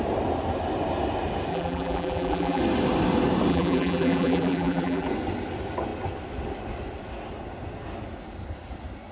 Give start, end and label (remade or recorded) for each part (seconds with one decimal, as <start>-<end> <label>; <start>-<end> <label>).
0.0-1.5 recorded; 1.5-2.6 remade; 2.6-3.5 recorded; 3.5-5.1 remade; 5.1-9.1 recorded